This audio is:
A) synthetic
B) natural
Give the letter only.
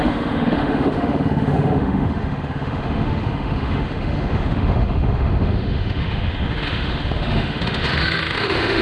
A